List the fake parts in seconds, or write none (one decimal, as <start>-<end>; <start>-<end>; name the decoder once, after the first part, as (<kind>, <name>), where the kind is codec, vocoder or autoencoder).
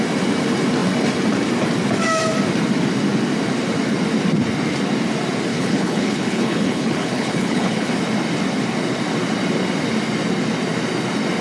5.5-7.9 (codec, HILCodec)